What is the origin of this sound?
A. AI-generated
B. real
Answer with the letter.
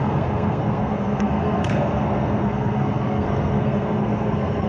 A